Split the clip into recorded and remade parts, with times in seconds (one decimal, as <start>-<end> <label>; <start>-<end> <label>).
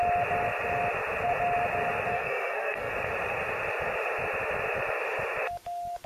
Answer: 0.0-2.1 recorded; 2.1-2.9 remade; 2.9-6.1 recorded